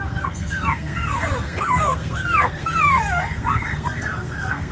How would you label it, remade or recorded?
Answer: remade